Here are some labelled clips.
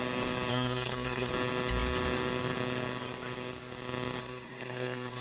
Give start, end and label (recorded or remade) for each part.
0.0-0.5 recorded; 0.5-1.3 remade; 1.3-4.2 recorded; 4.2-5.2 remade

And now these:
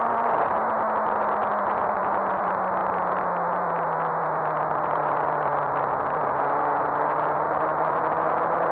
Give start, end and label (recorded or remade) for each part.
0.0-0.6 remade; 0.6-1.6 recorded; 1.6-8.7 remade

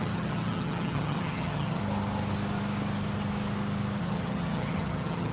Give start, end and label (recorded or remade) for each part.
0.0-1.8 remade; 1.8-4.0 recorded; 4.0-5.3 remade

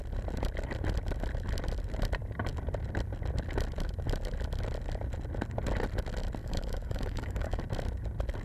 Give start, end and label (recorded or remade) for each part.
0.0-6.4 recorded; 6.4-7.6 remade; 7.6-8.4 recorded

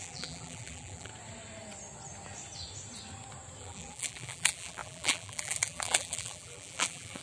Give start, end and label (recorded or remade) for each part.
0.0-1.1 remade; 1.1-3.6 recorded; 3.6-7.2 remade

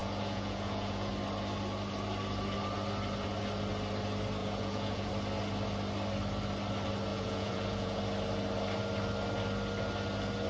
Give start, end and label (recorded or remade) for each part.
0.0-1.1 remade; 1.1-4.4 recorded; 4.4-5.1 remade; 5.1-7.1 recorded; 7.1-8.0 remade; 8.0-10.5 recorded

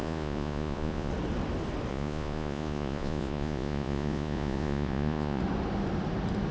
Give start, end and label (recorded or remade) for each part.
0.0-1.1 remade; 1.1-1.9 recorded; 1.9-5.4 remade; 5.4-6.5 recorded

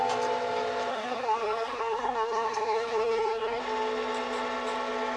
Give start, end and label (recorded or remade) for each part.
0.0-0.9 recorded; 0.9-3.6 remade; 3.6-5.2 recorded